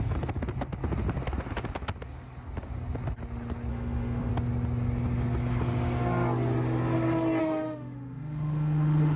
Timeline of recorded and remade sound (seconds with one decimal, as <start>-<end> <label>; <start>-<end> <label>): 0.0-3.7 recorded; 3.7-4.3 remade; 4.3-7.4 recorded; 7.4-9.2 remade

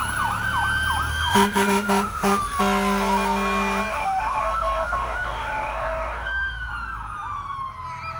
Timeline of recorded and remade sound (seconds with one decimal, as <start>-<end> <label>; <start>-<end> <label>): 0.0-1.1 recorded; 1.1-2.6 remade; 2.6-3.9 recorded; 3.9-6.7 remade; 6.7-8.2 recorded

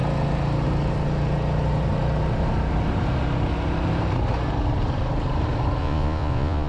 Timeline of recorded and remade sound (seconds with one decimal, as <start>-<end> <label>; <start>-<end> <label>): 0.0-5.8 recorded; 5.8-6.7 remade

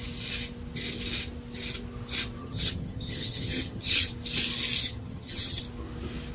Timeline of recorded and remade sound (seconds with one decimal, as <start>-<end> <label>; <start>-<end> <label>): 0.0-2.4 recorded; 2.4-4.1 remade; 4.1-4.8 recorded; 4.8-5.6 remade; 5.6-6.3 recorded

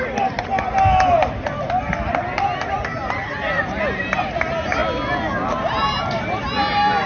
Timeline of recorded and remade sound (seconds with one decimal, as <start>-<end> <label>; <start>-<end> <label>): 0.0-7.1 recorded

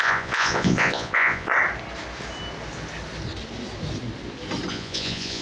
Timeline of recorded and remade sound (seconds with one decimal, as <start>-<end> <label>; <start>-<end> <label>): 0.0-1.5 remade; 1.5-4.7 recorded; 4.7-5.4 remade